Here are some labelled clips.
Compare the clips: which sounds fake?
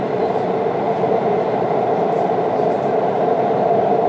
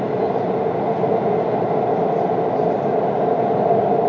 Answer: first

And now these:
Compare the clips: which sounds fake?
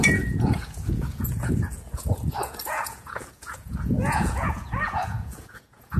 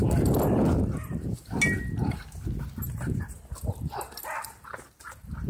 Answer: first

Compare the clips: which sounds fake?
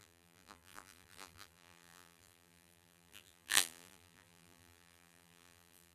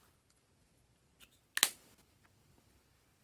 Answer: first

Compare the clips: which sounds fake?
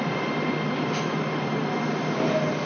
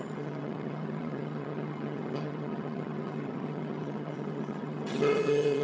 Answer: second